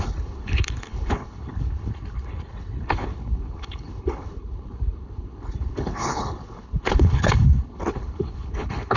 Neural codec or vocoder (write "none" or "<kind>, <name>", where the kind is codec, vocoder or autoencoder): codec, HILCodec